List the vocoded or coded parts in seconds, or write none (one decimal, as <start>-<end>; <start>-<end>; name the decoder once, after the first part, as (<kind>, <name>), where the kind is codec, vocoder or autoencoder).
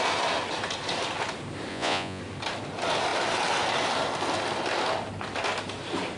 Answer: 1.7-2.2 (vocoder, Vocos)